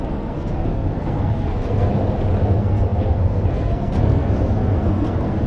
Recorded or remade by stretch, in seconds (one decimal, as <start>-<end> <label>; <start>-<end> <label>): 0.0-1.9 remade; 1.9-2.4 recorded; 2.4-5.5 remade